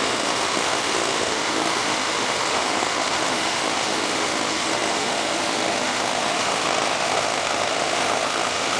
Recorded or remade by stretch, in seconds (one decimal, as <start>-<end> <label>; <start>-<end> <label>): 0.0-8.8 remade